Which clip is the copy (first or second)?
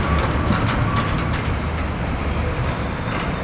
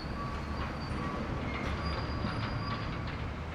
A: first